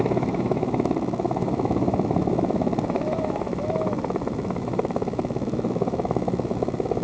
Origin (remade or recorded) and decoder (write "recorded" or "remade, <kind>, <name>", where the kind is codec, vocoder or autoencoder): remade, autoencoder, DAC-VAE